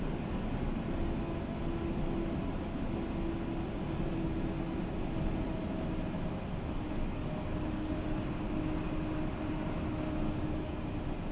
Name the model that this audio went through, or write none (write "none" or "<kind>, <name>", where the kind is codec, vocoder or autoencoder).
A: none